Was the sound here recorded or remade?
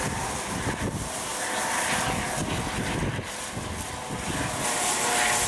recorded